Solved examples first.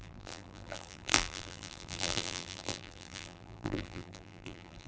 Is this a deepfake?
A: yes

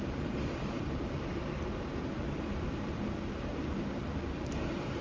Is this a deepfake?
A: yes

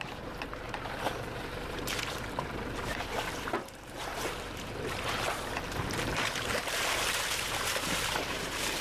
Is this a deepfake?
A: yes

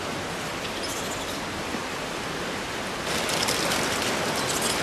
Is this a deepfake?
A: no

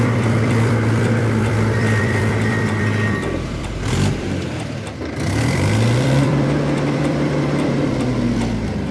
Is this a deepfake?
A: yes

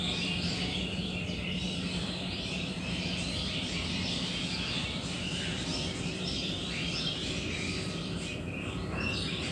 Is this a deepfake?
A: yes